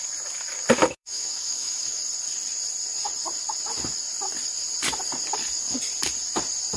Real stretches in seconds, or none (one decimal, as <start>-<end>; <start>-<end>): 0.0-0.8; 2.0-6.8